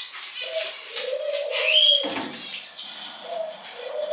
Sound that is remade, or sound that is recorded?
recorded